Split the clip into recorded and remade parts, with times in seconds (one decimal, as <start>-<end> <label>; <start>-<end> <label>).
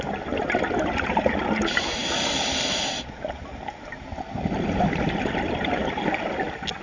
0.0-6.8 recorded